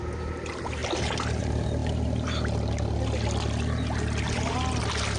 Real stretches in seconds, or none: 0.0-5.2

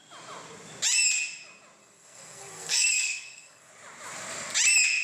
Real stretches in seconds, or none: 0.0-1.8; 3.7-5.0

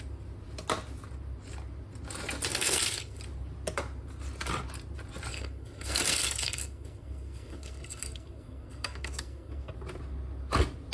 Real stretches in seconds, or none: 0.0-2.5; 3.2-5.3; 9.7-10.9

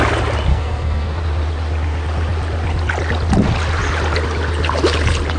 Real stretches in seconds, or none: 0.0-0.5; 1.2-5.4

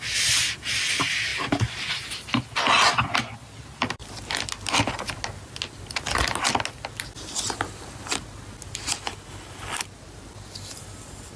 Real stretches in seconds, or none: 0.0-11.4

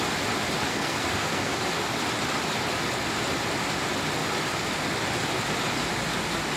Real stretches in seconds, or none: 0.0-0.7; 1.7-6.6

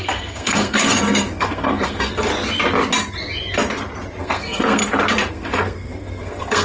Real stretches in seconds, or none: 2.3-4.2; 4.8-5.3